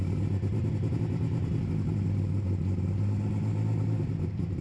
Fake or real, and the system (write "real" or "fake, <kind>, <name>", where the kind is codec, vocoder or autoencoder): fake, vocoder, BigVGAN v2